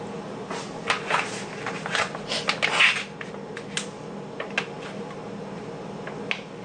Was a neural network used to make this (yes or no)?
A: no